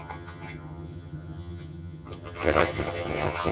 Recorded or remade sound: remade